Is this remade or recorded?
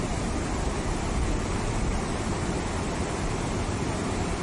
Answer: recorded